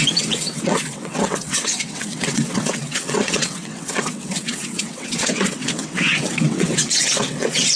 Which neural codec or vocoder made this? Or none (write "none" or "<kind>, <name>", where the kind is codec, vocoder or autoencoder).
vocoder, WaveNeXt